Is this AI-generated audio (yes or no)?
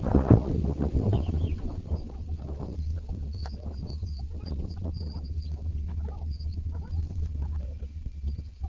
yes